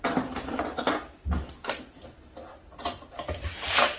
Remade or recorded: recorded